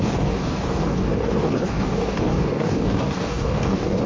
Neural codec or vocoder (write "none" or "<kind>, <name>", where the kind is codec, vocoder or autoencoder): codec, DAC